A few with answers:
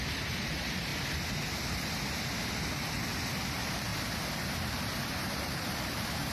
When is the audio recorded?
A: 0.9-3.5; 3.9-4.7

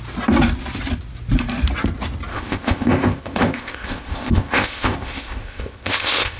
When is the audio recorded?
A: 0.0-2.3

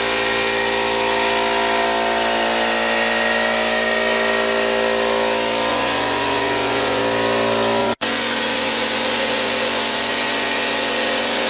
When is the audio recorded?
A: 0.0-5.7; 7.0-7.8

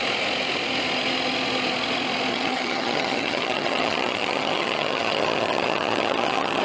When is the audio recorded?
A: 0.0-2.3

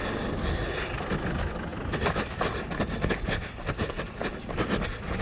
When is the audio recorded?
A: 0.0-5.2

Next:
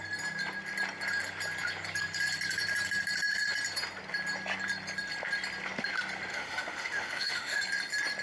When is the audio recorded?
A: 0.0-6.3; 7.6-8.2